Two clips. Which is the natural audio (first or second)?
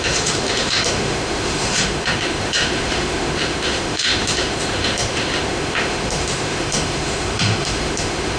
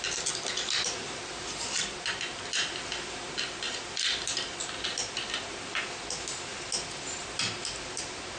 second